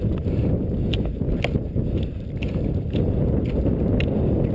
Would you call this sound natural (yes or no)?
yes